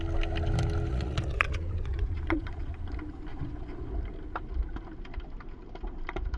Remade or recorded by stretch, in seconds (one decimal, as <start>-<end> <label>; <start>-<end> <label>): 0.0-0.9 recorded; 0.9-2.7 remade; 2.7-3.3 recorded; 3.3-3.9 remade; 3.9-6.4 recorded